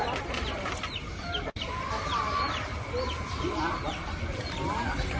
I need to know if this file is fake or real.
real